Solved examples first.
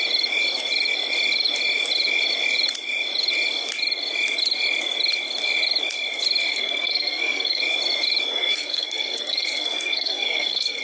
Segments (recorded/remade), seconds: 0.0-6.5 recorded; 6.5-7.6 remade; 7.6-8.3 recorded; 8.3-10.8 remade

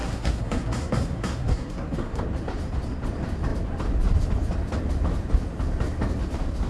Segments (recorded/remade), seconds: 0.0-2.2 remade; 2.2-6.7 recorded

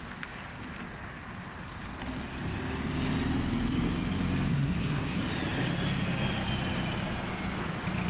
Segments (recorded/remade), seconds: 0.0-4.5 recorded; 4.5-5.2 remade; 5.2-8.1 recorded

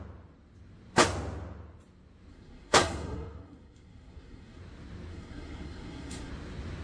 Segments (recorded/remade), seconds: 0.0-2.3 recorded; 2.3-4.6 remade; 4.6-5.1 recorded; 5.1-6.3 remade; 6.3-6.8 recorded

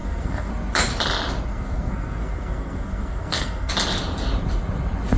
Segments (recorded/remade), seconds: 0.0-0.5 remade; 0.5-1.5 recorded; 1.5-3.7 remade; 3.7-5.2 recorded

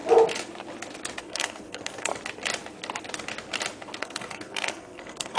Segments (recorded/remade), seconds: 0.0-1.2 recorded; 1.2-2.1 remade; 2.1-4.0 recorded; 4.0-5.4 remade

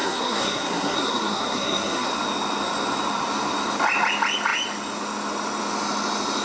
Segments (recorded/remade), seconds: 0.0-2.1 remade; 2.1-6.4 recorded

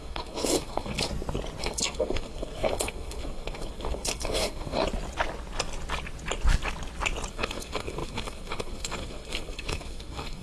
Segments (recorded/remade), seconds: 0.0-1.1 remade; 1.1-1.6 recorded; 1.6-4.8 remade; 4.8-7.3 recorded; 7.3-10.4 remade